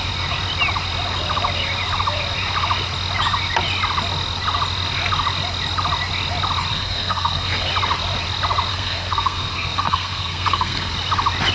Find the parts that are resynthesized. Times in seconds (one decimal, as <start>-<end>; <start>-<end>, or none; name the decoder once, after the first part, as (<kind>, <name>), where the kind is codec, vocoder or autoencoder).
6.7-7.7 (codec, SNAC); 8.7-10.9